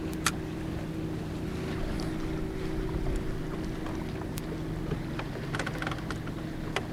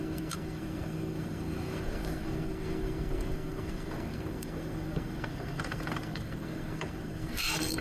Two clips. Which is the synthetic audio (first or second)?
second